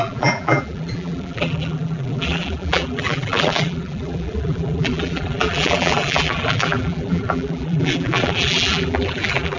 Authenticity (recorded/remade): remade